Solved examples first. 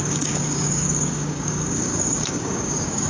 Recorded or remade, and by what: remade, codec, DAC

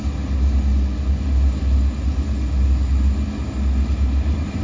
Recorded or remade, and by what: recorded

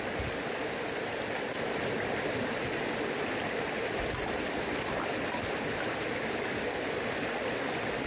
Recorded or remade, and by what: recorded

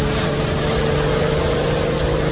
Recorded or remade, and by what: remade, vocoder, BigVGAN v2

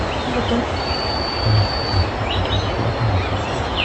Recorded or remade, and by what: recorded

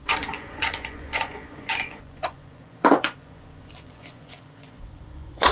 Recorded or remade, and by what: remade, vocoder, Vocos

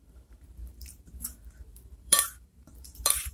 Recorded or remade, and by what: remade, vocoder, BigVGAN v2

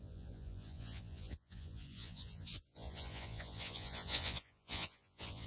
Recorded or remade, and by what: remade, vocoder, Vocos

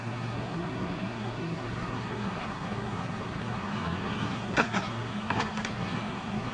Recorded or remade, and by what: remade, codec, SNAC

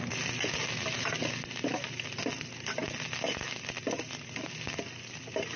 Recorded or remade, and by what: recorded